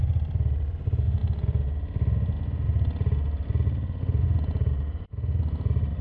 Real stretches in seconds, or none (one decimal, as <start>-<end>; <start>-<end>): 0.0-6.0